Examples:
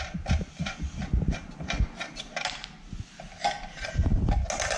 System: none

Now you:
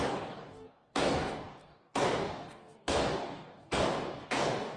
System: codec, DAC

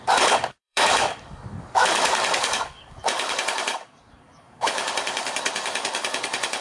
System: codec, DAC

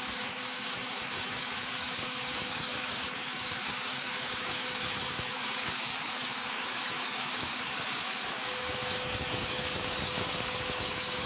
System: codec, DAC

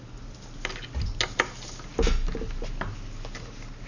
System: none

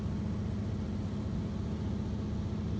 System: none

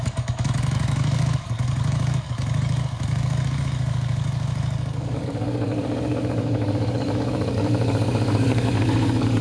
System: codec, DAC